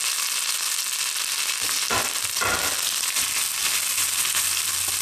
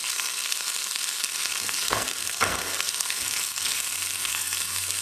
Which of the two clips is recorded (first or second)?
first